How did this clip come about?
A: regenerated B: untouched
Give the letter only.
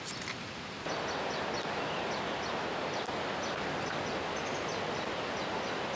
B